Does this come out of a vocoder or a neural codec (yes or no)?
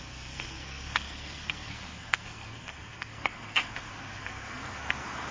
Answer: yes